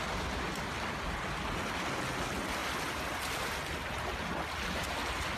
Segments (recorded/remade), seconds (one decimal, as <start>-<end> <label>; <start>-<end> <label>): 0.0-5.4 recorded